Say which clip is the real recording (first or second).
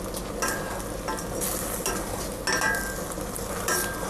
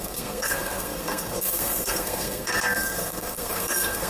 first